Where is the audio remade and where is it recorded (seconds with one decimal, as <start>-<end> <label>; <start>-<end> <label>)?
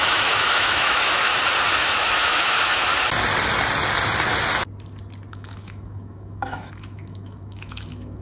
0.0-1.3 remade; 1.3-1.8 recorded; 1.8-2.9 remade; 2.9-5.3 recorded; 5.3-8.2 remade